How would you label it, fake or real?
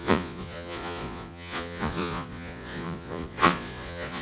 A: fake